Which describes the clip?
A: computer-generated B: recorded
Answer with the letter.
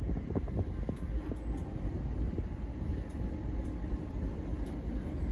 B